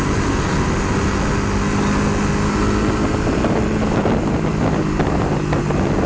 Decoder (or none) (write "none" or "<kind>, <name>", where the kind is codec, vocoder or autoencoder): none